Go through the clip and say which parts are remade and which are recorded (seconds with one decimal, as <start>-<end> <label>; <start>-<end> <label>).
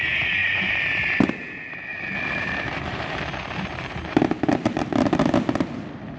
0.0-0.4 recorded; 0.4-1.3 remade; 1.3-1.9 recorded; 1.9-4.8 remade; 4.8-6.2 recorded